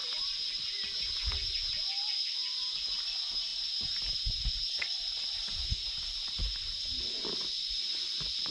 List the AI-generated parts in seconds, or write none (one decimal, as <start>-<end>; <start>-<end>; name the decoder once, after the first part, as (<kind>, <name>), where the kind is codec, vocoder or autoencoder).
none